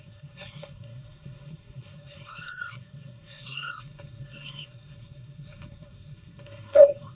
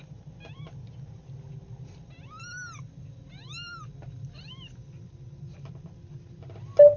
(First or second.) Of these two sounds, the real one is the second